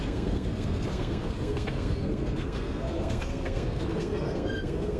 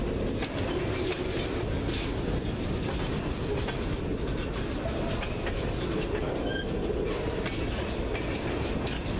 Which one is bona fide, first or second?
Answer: second